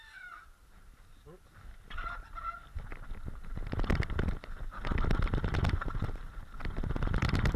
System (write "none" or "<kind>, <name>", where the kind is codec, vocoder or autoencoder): none